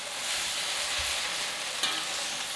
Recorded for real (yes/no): yes